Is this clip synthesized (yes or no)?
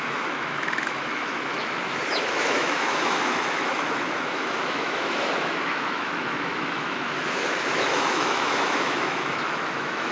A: yes